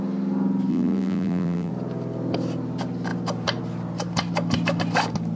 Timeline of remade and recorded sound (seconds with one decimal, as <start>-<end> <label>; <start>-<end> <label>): 0.0-0.7 recorded; 0.7-1.7 remade; 1.7-5.4 recorded

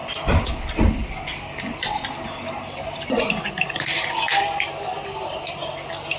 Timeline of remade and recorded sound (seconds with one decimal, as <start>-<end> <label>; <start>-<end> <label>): 0.0-6.2 recorded

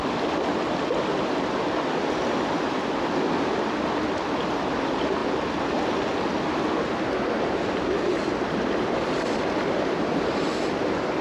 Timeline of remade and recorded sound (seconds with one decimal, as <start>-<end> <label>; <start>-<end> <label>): 0.0-11.2 recorded

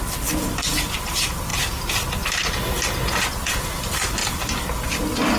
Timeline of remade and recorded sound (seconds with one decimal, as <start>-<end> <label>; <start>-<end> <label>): 0.0-1.5 remade; 1.5-3.3 recorded; 3.3-5.4 remade

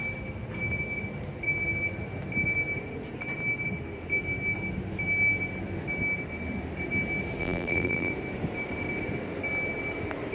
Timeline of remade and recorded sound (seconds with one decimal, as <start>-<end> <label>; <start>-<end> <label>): 0.0-7.4 recorded; 7.4-8.1 remade; 8.1-10.3 recorded

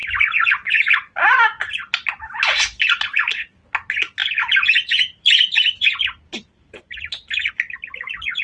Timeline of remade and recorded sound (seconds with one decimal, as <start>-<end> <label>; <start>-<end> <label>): 0.0-4.2 recorded; 4.2-7.5 remade; 7.5-8.4 recorded

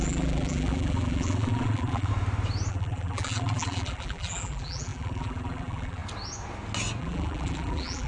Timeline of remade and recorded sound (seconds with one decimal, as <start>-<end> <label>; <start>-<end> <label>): 0.0-2.1 remade; 2.1-2.7 recorded; 2.7-6.0 remade; 6.0-7.0 recorded; 7.0-8.1 remade

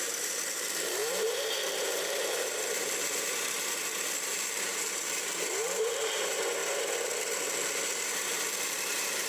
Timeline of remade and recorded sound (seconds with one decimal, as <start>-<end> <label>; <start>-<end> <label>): 0.0-6.6 remade; 6.6-8.1 recorded; 8.1-9.3 remade